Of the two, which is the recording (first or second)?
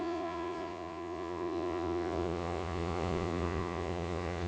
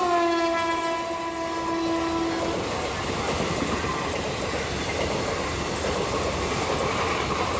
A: second